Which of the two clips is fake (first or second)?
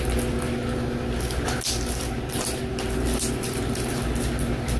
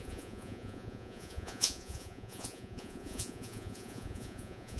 second